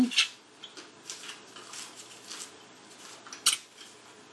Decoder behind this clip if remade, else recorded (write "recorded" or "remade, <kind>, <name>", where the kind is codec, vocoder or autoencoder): recorded